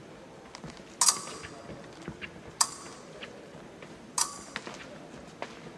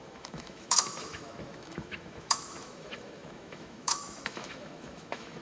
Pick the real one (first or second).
first